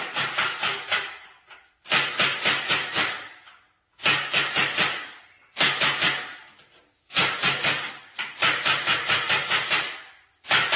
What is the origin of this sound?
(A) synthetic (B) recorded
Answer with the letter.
B